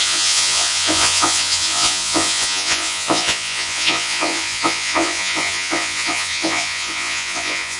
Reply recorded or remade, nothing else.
remade